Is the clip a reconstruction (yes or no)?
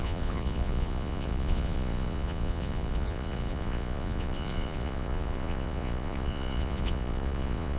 yes